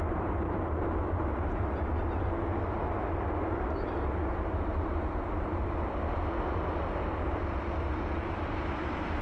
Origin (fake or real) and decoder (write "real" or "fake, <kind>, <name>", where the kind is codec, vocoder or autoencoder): real